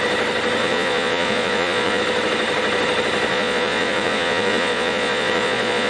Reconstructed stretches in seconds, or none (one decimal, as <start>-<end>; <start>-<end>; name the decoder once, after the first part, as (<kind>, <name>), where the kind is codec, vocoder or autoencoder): 0.6-2.0 (vocoder, Vocos); 3.3-5.9